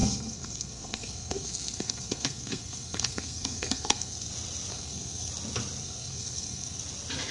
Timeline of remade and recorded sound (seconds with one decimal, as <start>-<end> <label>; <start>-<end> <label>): 0.0-4.3 remade; 4.3-4.7 recorded; 4.7-5.3 remade; 5.3-5.8 recorded; 5.8-6.8 remade; 6.8-7.3 recorded